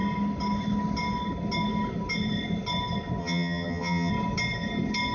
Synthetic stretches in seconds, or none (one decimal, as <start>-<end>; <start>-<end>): 3.2-4.1